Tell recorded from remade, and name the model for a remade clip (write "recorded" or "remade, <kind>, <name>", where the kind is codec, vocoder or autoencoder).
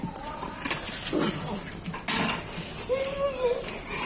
recorded